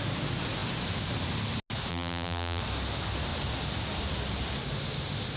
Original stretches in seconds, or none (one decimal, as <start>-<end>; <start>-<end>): 0.0-1.9; 2.6-5.4